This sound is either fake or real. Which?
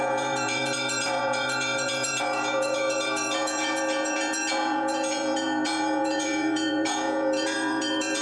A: fake